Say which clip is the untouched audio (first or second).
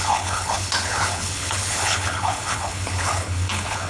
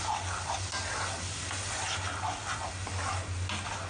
second